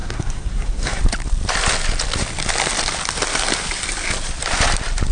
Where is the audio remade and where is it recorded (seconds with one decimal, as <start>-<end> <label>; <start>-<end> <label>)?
0.0-1.0 remade; 1.0-5.1 recorded

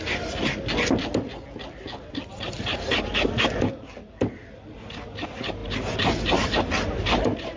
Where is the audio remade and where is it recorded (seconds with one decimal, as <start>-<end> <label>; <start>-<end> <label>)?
0.0-7.6 recorded

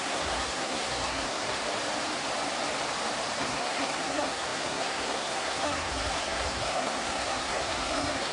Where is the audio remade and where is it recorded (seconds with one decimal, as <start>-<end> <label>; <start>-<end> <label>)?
0.0-1.6 remade; 1.6-3.4 recorded; 3.4-8.3 remade

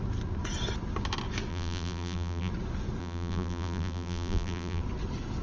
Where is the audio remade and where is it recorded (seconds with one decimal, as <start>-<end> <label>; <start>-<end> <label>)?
0.0-1.5 recorded; 1.5-2.5 remade; 2.5-3.0 recorded; 3.0-4.8 remade; 4.8-5.4 recorded

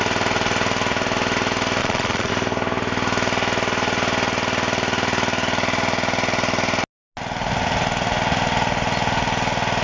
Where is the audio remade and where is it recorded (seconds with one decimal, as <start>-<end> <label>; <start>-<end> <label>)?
0.0-1.8 recorded; 1.8-2.3 remade; 2.3-9.8 recorded

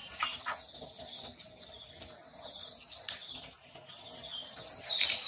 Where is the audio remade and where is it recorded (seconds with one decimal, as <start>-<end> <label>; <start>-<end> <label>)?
0.0-5.3 recorded